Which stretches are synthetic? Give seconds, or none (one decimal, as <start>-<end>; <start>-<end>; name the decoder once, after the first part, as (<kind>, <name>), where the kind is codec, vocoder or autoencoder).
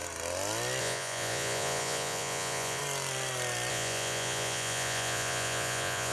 0.8-2.8 (vocoder, Vocos); 3.7-6.1